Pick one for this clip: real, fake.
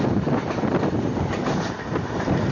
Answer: real